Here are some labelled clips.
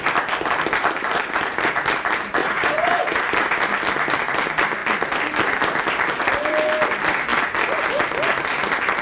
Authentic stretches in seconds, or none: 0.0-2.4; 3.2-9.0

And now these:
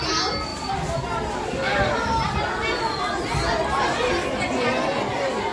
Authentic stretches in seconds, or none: 0.0-5.5

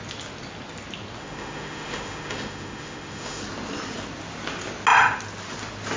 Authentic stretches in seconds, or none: 0.0-1.2; 3.4-6.0

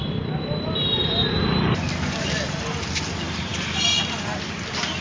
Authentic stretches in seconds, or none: 0.0-5.0

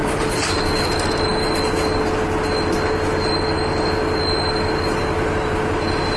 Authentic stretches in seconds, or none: 0.6-6.2